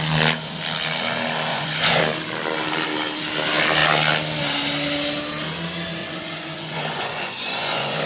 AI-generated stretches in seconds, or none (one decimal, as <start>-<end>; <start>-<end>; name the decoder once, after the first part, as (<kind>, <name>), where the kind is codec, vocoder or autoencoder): 1.5-2.0 (vocoder, Vocos); 6.0-8.1